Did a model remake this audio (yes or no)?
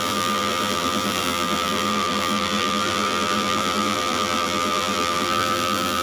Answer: yes